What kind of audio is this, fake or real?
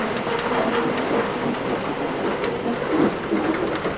real